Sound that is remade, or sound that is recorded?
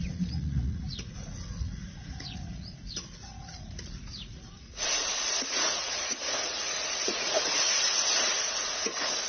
remade